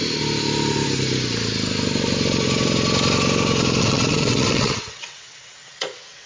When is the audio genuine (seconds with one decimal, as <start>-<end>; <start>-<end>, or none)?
0.0-3.8

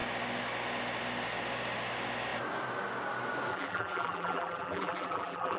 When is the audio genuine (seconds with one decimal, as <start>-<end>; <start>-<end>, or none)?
0.0-3.5

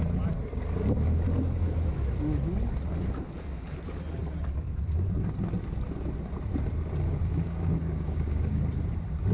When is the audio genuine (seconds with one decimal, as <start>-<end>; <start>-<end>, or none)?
0.0-7.3; 8.6-9.3

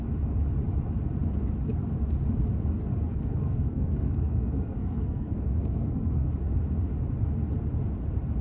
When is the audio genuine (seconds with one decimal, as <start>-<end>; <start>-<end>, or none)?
0.0-3.1; 6.3-8.4

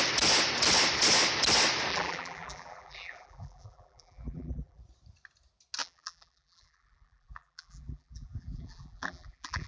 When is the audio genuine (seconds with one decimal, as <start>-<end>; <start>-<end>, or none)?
0.0-1.9; 4.8-5.8

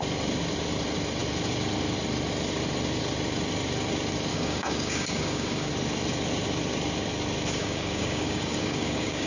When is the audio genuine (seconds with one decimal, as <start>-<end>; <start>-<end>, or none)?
0.0-4.3; 5.7-7.6

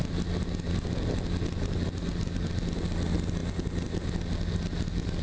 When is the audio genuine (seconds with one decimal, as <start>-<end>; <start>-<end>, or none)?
0.0-5.2